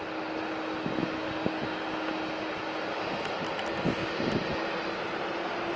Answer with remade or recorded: recorded